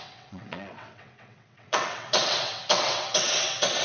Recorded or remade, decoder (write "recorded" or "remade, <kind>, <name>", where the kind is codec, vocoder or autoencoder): remade, vocoder, WaveNeXt